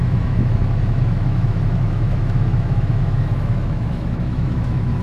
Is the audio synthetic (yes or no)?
yes